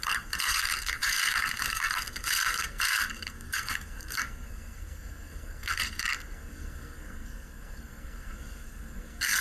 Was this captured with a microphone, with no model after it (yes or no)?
no